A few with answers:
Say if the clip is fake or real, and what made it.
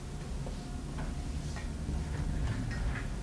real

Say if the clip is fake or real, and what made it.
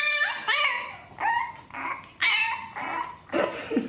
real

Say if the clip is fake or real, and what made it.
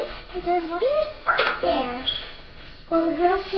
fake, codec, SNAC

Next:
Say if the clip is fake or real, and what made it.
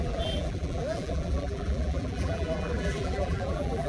fake, vocoder, BigVGAN v2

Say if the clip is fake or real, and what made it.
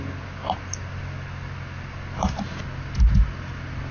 real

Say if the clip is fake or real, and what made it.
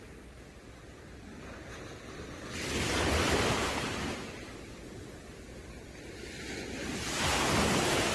real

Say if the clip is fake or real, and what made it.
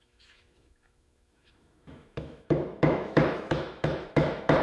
fake, autoencoder, DAC-VAE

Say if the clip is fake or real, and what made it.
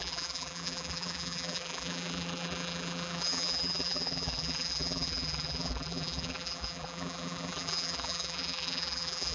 fake, vocoder, BigVGAN v2